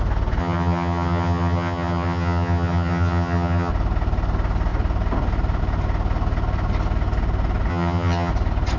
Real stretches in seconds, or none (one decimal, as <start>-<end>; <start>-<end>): 0.0-0.4; 3.7-7.7; 8.3-8.8